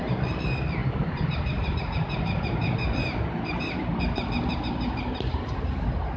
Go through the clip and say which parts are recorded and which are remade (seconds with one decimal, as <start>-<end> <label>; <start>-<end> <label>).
0.0-0.8 recorded; 0.8-4.0 remade; 4.0-6.2 recorded